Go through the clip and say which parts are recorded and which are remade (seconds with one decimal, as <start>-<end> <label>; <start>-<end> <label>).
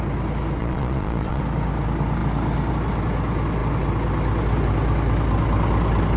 0.0-0.6 recorded; 0.6-1.4 remade; 1.4-6.2 recorded